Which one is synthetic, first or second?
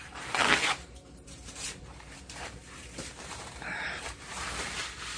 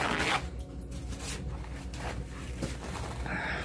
first